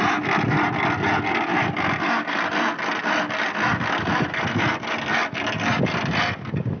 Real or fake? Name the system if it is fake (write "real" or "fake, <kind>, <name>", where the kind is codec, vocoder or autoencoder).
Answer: real